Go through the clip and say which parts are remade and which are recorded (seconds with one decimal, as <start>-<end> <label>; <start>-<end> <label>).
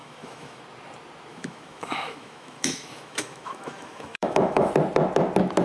0.0-0.6 remade; 0.6-1.3 recorded; 1.3-4.7 remade; 4.7-5.6 recorded